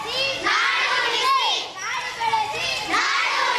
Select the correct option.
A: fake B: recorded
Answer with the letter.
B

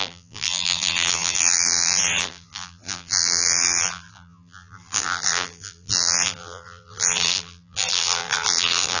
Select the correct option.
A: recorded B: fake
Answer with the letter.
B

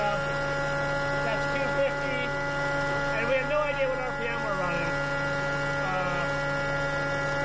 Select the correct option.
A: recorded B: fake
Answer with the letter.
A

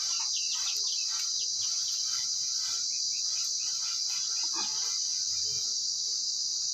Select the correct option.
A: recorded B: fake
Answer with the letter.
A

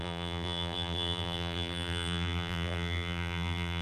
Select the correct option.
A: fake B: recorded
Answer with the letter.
A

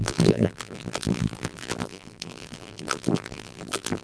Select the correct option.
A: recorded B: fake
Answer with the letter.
B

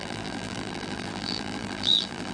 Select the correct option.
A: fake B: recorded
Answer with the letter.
A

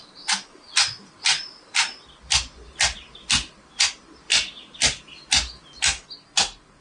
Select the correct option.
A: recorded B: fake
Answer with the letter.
A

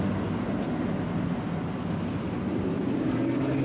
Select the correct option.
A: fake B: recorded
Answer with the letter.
B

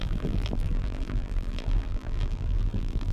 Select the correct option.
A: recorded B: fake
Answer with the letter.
B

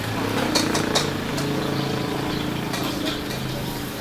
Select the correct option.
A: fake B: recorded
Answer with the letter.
B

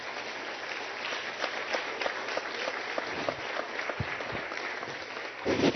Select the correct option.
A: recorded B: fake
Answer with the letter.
A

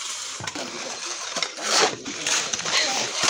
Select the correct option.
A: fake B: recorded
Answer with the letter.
A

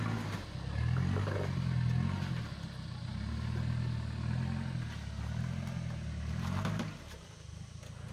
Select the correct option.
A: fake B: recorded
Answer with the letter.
B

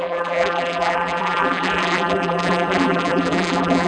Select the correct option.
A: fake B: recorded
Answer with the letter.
A